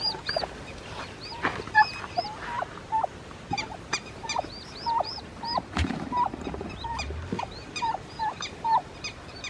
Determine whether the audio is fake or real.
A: fake